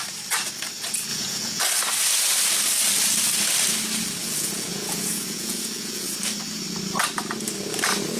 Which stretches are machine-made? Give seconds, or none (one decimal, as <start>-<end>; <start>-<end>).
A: 1.1-1.6; 4.2-6.1